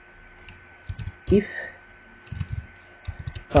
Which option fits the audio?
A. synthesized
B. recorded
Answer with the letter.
B